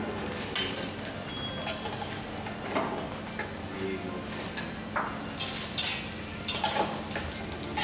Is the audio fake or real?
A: real